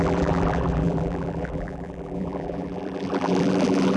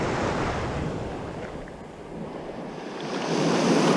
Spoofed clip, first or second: first